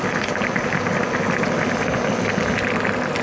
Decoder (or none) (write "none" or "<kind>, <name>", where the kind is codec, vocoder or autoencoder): none